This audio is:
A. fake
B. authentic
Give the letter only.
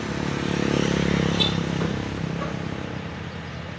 B